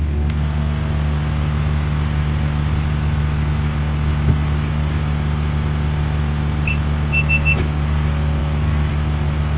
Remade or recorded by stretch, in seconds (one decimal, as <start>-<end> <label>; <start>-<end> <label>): 0.0-8.4 recorded; 8.4-8.9 remade; 8.9-9.6 recorded